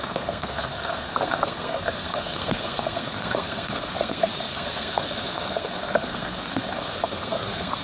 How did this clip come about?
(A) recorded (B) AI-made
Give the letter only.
B